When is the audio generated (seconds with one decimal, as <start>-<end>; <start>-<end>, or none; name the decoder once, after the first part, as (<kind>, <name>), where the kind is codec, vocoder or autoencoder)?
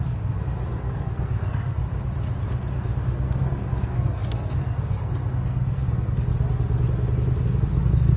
0.0-1.8 (codec, SNAC); 2.8-6.3; 7.7-8.2